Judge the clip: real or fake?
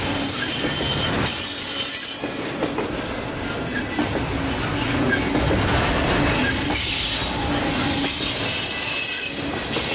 real